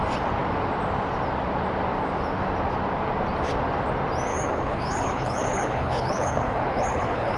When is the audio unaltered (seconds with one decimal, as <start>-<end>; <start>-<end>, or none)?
0.0-4.3